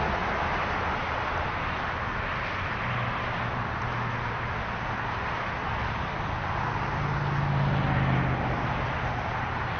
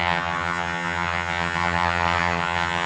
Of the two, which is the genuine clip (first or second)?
first